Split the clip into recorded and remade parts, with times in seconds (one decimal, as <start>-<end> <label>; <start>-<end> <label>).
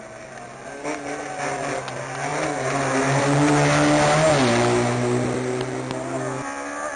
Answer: 0.0-7.0 recorded